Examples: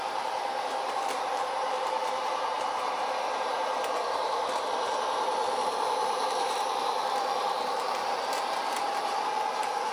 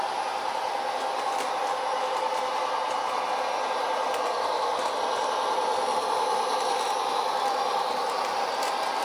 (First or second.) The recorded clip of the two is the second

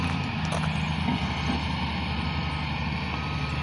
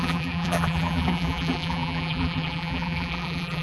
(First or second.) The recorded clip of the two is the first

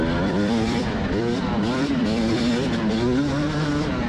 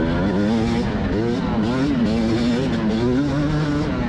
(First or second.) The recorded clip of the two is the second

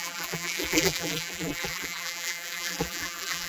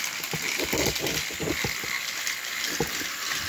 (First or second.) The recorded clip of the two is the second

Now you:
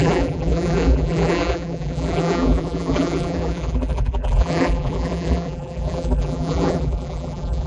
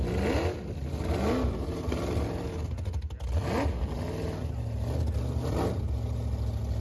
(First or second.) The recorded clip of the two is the second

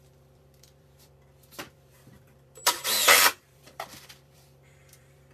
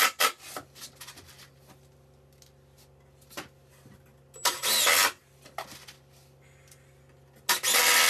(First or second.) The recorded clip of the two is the second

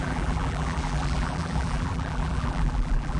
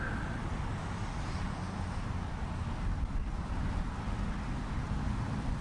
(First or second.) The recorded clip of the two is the second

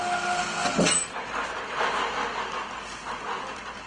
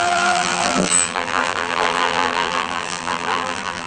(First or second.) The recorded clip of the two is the first